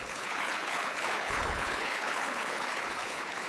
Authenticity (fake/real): fake